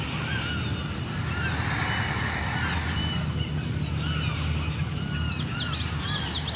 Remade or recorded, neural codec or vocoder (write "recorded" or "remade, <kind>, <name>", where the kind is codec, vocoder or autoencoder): recorded